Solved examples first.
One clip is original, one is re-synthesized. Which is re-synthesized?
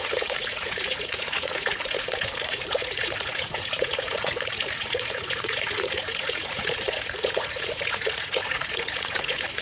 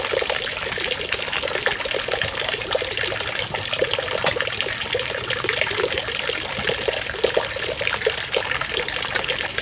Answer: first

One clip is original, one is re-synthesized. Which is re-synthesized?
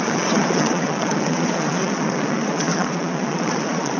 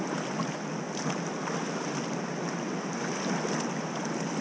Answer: first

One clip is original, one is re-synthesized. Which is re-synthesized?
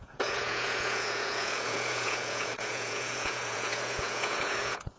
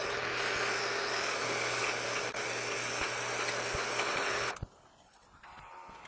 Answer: first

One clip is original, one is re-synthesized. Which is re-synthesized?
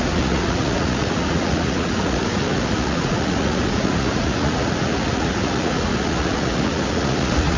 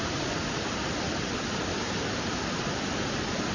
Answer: first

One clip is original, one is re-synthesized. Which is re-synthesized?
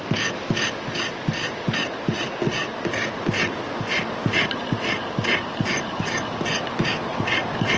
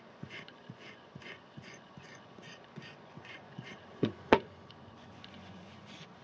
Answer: second